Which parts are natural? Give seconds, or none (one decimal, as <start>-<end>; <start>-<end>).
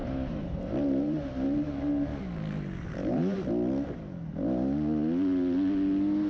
2.1-2.8; 3.2-6.3